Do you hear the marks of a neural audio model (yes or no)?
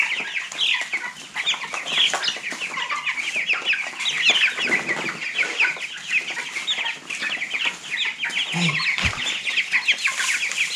no